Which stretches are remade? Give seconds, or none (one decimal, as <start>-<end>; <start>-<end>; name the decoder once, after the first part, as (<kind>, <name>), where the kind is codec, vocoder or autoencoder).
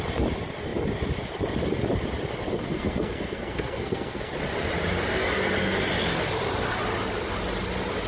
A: 2.5-4.3 (codec, SNAC)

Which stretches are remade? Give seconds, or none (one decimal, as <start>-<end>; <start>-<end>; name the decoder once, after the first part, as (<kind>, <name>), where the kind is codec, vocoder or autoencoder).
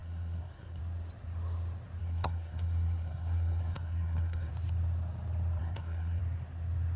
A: 0.0-0.8 (codec, SNAC); 2.0-4.5; 5.6-6.2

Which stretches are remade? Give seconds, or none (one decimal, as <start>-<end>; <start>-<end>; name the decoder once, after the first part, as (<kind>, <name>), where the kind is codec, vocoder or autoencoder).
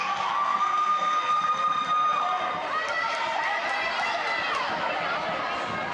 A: 0.0-1.3 (codec, SNAC)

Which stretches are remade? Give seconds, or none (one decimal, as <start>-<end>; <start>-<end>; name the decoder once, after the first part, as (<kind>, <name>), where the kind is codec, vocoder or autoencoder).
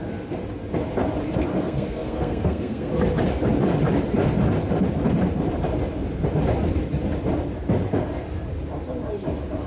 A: 1.5-2.9 (codec, SNAC)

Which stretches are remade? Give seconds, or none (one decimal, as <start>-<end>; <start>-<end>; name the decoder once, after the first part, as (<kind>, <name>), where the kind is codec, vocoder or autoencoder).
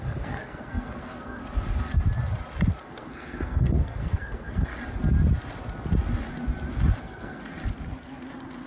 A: 0.0-1.4 (codec, SNAC); 2.8-4.7; 7.0-7.4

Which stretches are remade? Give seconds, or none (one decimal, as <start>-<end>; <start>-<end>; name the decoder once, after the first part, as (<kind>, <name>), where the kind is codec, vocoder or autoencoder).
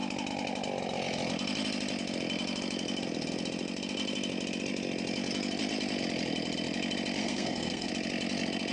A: 7.2-7.9 (codec, SNAC)